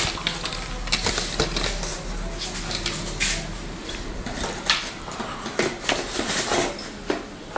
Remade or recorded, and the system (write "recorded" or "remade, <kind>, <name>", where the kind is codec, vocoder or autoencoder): recorded